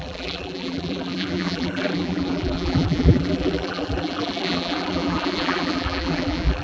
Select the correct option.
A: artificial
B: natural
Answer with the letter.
A